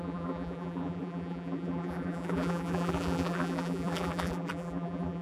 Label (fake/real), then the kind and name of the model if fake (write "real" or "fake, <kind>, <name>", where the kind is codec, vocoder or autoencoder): fake, vocoder, BigVGAN v2